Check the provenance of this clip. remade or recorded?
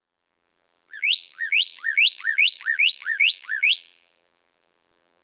remade